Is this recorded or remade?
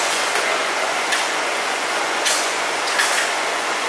remade